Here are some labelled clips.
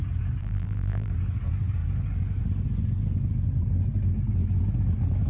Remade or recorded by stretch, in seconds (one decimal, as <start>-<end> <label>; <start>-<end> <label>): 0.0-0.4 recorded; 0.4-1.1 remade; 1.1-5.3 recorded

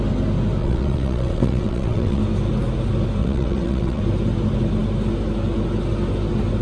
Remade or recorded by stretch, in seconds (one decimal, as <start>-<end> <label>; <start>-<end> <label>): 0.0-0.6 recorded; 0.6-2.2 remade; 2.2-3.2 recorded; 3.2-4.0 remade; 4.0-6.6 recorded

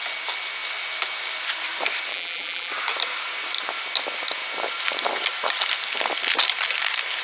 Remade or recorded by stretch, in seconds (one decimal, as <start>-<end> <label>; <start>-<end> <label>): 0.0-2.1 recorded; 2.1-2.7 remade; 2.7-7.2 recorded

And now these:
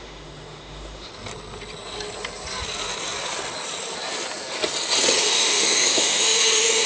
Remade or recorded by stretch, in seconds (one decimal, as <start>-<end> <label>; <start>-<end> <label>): 0.0-1.1 remade; 1.1-5.2 recorded; 5.2-6.9 remade